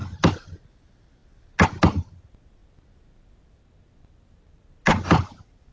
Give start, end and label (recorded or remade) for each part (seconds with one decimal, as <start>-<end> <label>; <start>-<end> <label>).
0.0-5.7 recorded